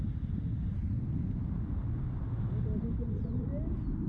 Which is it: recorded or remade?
recorded